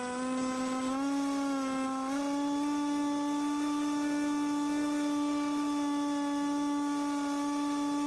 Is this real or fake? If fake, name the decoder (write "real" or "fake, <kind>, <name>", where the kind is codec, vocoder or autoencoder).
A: real